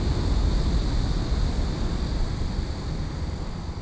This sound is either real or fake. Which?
real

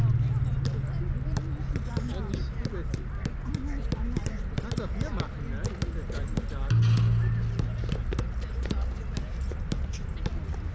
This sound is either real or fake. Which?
real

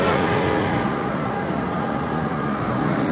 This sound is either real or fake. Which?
fake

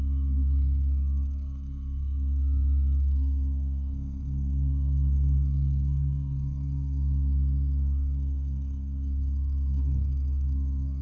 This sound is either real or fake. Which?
fake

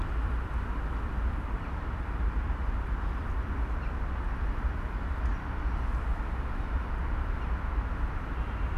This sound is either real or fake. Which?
real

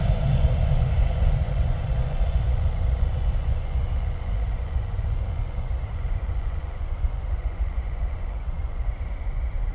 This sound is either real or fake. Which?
fake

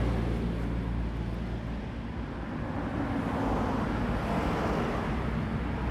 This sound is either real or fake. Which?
real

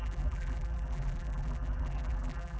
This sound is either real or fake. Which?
fake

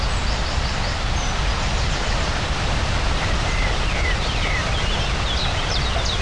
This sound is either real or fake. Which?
fake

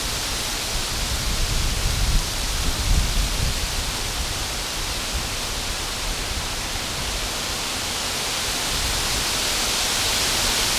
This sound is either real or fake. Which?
real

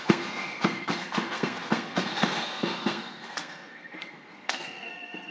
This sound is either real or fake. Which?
fake